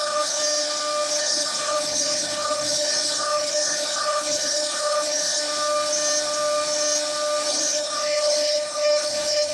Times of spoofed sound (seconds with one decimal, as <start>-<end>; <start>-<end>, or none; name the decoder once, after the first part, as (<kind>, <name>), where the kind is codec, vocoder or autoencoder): 0.0-0.4 (codec, HILCodec); 1.2-5.4; 7.5-9.5